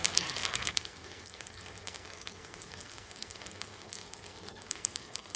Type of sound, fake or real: fake